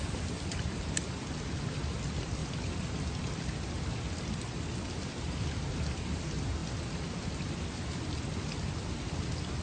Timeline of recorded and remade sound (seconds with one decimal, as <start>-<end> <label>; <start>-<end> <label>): 0.0-2.4 recorded; 2.4-3.8 remade; 3.8-9.6 recorded